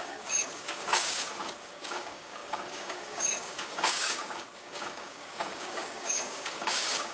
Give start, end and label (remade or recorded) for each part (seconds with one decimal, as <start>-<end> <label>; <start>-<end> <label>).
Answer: 0.0-7.1 remade